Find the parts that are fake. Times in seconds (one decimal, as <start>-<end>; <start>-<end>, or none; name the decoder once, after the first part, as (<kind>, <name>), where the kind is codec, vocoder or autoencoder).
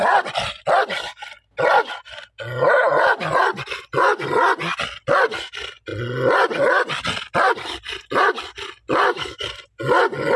none